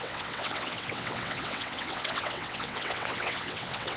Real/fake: fake